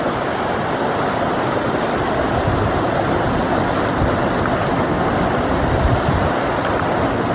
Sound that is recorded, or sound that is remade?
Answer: recorded